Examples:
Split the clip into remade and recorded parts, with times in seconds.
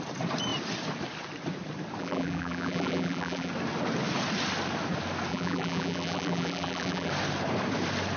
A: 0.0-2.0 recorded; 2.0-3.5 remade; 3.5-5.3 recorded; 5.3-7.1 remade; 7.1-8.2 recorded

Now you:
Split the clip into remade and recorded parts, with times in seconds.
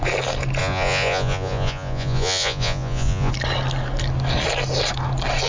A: 0.0-0.6 recorded; 0.6-3.3 remade; 3.3-5.5 recorded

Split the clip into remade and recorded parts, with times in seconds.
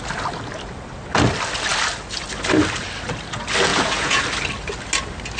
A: 0.0-3.7 recorded; 3.7-4.2 remade; 4.2-5.4 recorded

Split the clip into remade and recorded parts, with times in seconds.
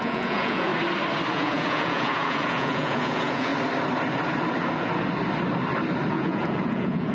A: 0.0-0.7 remade; 0.7-1.3 recorded; 1.3-3.5 remade; 3.5-6.1 recorded; 6.1-7.1 remade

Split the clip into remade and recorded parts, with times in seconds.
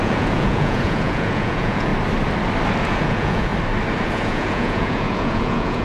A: 0.0-1.9 remade; 1.9-2.8 recorded; 2.8-3.5 remade; 3.5-4.0 recorded; 4.0-5.8 remade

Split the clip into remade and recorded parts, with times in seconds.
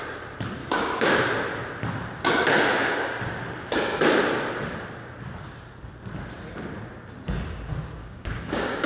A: 0.0-0.6 recorded; 0.6-1.2 remade; 1.2-2.8 recorded; 2.8-3.4 remade; 3.4-8.0 recorded; 8.0-8.9 remade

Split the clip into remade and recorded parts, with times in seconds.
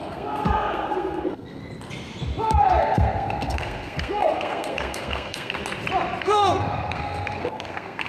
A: 0.0-1.6 remade; 1.6-2.4 recorded; 2.4-5.6 remade; 5.6-6.2 recorded; 6.2-8.1 remade